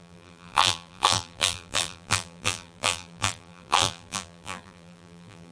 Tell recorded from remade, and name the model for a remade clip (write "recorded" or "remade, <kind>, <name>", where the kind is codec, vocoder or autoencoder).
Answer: remade, vocoder, BigVGAN v2